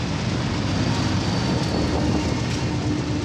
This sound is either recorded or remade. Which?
recorded